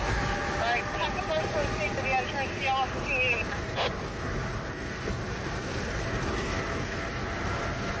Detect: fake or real real